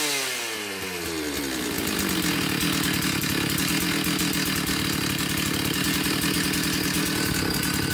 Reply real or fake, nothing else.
real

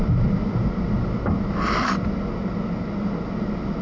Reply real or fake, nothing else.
real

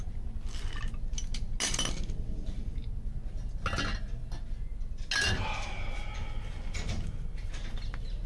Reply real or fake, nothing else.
real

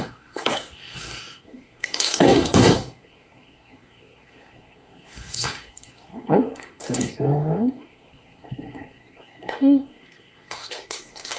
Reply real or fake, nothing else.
fake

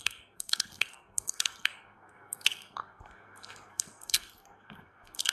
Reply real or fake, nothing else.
fake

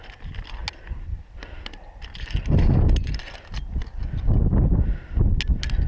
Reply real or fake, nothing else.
real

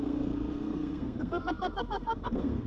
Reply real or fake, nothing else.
fake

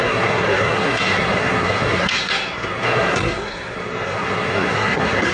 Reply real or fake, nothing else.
fake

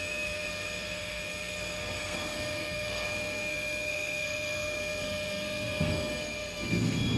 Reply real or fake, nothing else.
fake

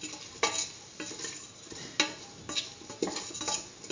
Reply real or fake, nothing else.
real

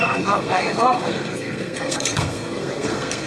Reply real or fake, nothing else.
fake